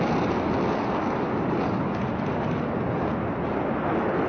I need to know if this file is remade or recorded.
recorded